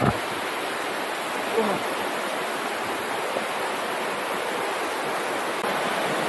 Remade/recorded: recorded